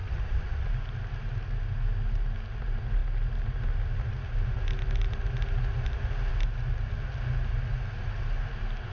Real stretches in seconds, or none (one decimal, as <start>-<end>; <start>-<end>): 0.7-8.9